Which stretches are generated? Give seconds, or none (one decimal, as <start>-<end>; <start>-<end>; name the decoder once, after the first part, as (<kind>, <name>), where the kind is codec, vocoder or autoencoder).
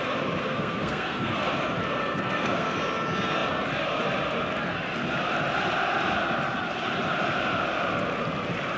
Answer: 0.4-1.5 (codec, SNAC); 2.0-2.8